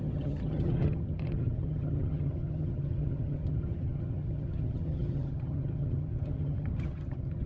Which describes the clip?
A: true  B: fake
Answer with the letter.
B